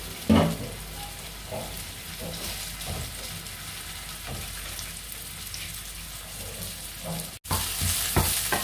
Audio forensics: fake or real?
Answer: real